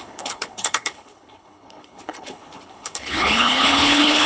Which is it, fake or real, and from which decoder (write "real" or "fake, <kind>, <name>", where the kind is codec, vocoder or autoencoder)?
fake, codec, HILCodec